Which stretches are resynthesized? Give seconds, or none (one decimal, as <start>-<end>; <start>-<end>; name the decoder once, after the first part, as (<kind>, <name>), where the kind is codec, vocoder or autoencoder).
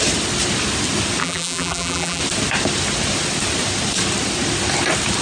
1.2-2.2 (vocoder, BigVGAN v2)